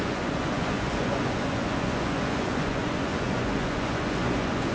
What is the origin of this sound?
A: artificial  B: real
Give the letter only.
A